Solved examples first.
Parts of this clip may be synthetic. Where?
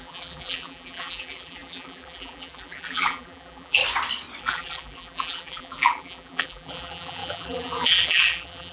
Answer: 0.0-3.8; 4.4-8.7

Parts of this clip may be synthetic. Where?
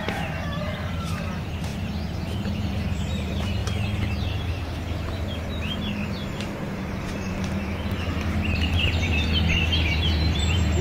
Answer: 0.0-3.6; 4.1-10.8